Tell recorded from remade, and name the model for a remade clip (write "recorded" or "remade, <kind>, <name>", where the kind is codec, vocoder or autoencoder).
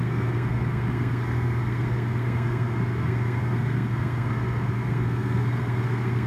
remade, codec, SNAC